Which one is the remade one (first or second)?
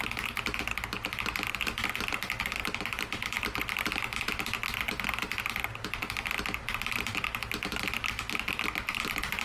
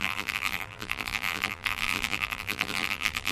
second